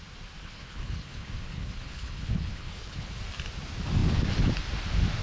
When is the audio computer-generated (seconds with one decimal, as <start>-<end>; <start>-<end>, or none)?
0.4-3.1